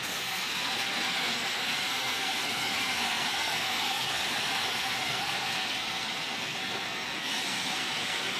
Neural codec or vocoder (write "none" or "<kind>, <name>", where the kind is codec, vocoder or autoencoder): codec, SNAC